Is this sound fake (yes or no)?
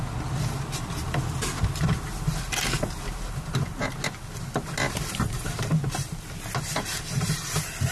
no